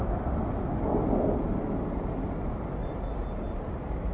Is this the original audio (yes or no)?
yes